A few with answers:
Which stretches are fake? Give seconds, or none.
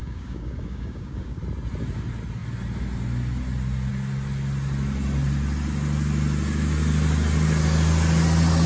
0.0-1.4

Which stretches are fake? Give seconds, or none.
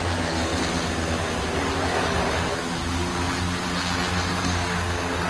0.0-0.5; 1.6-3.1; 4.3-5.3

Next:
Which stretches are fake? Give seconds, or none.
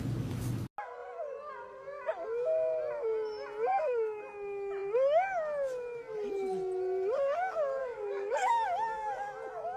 3.7-4.2; 7.8-8.5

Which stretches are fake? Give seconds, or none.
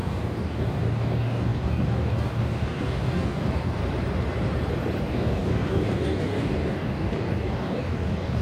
0.0-3.8; 5.0-8.4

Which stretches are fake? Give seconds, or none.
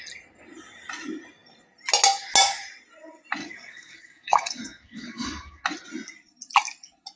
3.4-5.6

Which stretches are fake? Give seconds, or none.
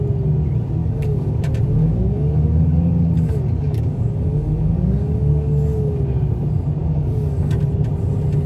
0.8-1.4; 1.8-6.0; 6.8-7.6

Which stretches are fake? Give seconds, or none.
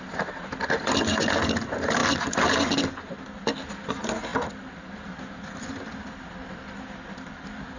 none